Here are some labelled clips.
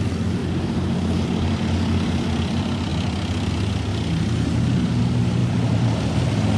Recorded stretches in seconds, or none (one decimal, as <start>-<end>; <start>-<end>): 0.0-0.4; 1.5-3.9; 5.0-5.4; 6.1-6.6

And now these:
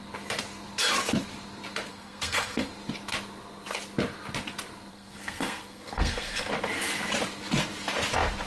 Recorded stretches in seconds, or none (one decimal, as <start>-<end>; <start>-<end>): 0.0-1.9; 2.7-4.9; 6.5-8.5

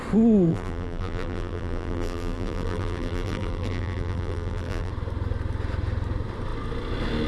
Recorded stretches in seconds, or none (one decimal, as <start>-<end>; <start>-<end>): 0.0-0.5; 4.9-7.3